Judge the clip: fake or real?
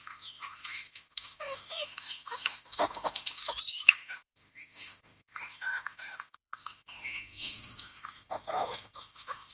fake